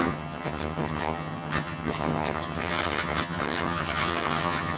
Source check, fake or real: fake